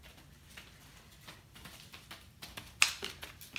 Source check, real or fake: real